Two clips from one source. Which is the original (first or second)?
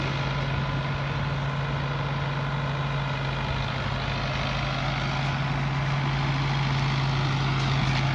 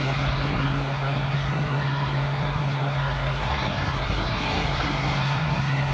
first